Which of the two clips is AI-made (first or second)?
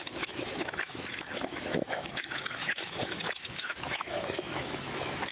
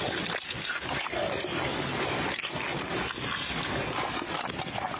first